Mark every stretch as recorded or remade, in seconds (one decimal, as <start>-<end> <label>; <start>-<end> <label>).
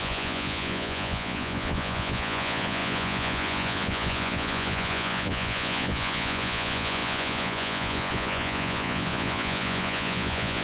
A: 0.0-10.6 remade